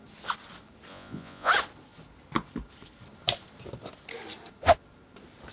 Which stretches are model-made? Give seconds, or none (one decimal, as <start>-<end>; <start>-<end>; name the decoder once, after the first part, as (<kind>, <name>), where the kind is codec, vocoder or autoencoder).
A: 0.9-1.5 (vocoder, Vocos)